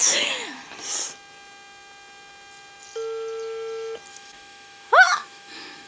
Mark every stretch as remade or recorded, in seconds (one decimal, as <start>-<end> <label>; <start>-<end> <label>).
0.0-0.6 remade; 0.6-4.1 recorded; 4.1-5.9 remade